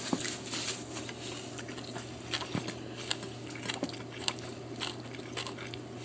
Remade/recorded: recorded